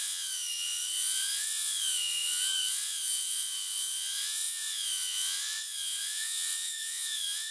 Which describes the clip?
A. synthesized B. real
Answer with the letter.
A